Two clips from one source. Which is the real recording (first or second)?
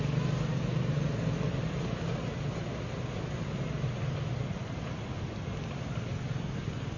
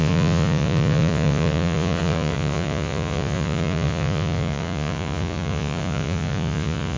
first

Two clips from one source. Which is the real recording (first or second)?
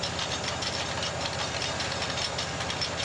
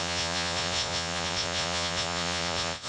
first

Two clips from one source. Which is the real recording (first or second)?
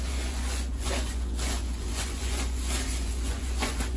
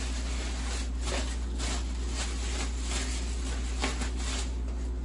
second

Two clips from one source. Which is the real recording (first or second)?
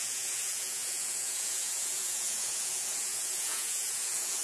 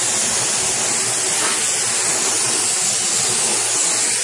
second